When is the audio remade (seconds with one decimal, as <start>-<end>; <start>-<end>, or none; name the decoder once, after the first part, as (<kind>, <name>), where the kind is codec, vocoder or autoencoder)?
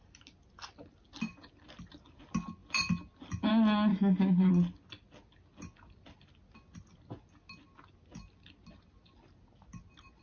3.9-4.5 (autoencoder, DAC-VAE)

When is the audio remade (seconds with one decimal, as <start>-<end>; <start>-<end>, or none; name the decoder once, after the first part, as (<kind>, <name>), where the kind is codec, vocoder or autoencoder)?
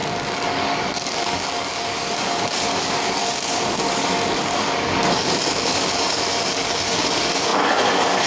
0.0-8.3 (codec, DAC)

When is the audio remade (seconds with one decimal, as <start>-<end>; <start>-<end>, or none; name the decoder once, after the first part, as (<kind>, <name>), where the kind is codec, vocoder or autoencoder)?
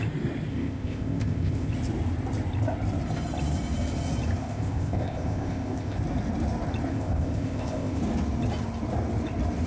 0.5-1.7 (codec, ZipCodec); 4.4-6.0; 6.9-8.0